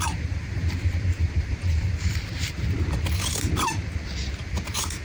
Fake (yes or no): yes